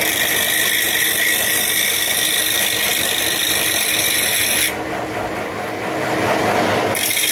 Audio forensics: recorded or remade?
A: recorded